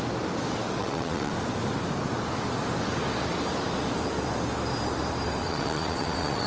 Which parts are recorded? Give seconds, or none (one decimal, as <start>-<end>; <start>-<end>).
0.0-0.8; 1.3-5.4